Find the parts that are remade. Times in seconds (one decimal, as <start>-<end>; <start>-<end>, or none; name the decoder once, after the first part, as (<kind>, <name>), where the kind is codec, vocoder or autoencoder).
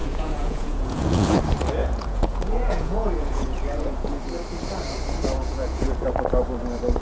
0.0-1.4 (vocoder, Vocos); 1.8-4.2; 5.4-6.0